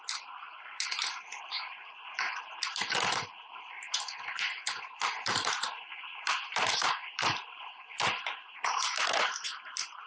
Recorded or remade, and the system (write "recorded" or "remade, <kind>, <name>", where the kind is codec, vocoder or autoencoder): remade, vocoder, BigVGAN v2